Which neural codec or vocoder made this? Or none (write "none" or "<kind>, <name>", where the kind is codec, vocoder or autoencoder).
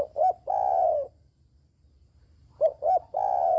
none